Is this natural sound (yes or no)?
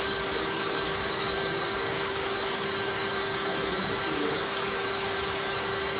no